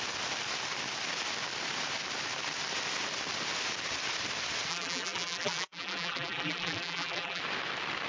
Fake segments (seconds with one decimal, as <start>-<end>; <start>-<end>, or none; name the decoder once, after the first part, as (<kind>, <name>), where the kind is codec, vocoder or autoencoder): 4.7-7.4 (vocoder, BigVGAN v2)